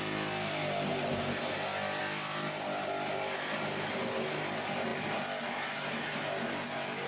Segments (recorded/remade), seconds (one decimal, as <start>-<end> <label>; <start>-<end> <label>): 0.0-7.1 recorded